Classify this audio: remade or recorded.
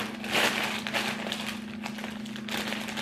recorded